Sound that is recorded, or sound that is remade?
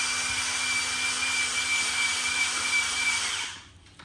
recorded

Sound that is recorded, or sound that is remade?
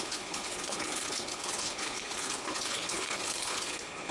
remade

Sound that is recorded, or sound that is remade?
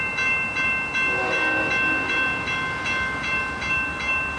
recorded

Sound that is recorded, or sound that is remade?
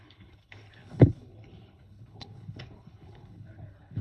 remade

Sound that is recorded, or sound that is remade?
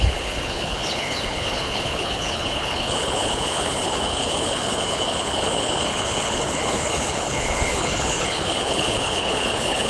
remade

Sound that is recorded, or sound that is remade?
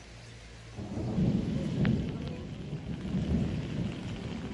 recorded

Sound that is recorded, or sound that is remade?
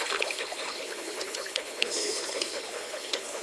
remade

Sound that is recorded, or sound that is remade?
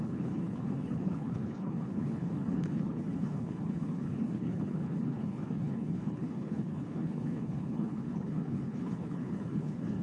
remade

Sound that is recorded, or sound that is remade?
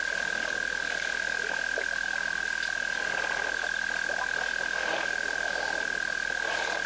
recorded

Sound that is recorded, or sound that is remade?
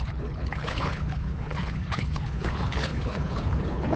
remade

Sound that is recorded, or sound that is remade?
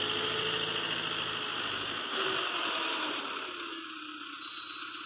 recorded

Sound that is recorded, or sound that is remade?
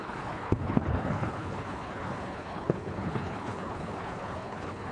remade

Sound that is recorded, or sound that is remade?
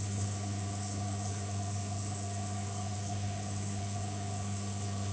remade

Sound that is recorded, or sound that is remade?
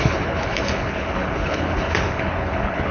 remade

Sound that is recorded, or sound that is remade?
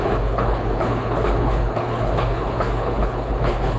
remade